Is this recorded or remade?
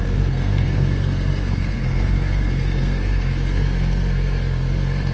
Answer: remade